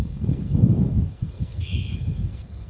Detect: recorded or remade remade